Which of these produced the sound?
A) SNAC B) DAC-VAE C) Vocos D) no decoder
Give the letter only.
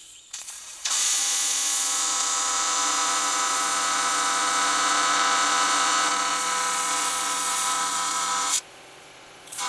C